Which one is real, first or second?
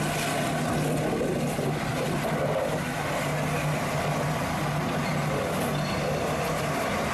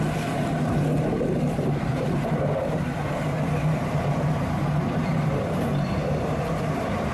first